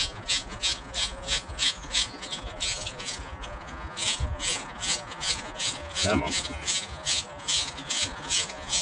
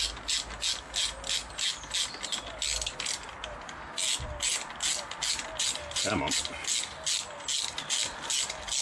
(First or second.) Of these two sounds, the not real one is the first